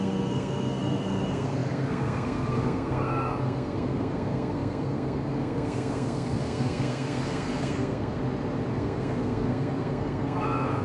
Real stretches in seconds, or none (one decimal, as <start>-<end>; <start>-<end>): 8.2-8.7